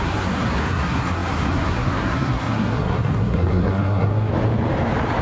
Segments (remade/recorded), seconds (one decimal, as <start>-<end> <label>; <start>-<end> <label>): 0.0-4.3 remade; 4.3-5.2 recorded